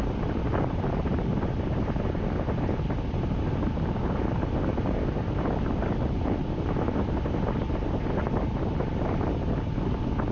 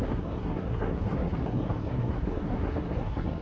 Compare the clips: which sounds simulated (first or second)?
second